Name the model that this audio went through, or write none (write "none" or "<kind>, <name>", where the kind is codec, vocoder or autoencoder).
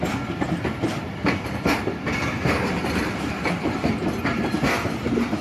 none